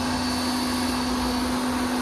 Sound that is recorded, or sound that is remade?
recorded